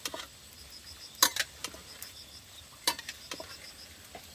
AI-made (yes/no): no